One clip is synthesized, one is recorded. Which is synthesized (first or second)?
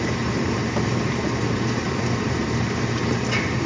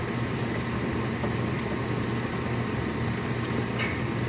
first